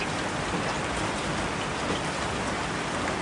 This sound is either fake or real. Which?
real